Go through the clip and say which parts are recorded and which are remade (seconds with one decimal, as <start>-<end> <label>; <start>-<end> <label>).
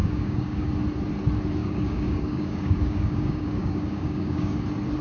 0.0-0.7 remade; 0.7-1.6 recorded; 1.6-4.6 remade; 4.6-5.0 recorded